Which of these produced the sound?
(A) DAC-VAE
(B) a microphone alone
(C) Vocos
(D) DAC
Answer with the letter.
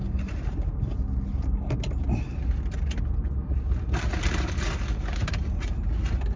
B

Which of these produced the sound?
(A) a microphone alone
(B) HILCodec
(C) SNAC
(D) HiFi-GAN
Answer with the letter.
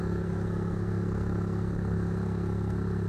C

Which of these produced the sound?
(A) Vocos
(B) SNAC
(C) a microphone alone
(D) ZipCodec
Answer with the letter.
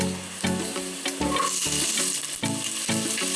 C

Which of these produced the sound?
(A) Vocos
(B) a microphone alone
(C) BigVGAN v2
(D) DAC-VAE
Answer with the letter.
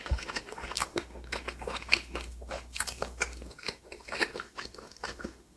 D